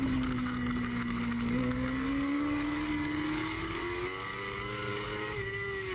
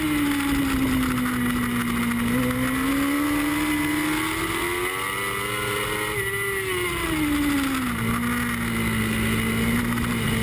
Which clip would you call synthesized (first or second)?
first